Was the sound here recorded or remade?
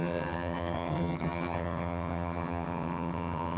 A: remade